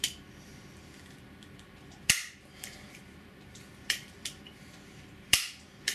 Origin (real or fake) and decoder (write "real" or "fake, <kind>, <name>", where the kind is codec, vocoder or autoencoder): fake, vocoder, BigVGAN v2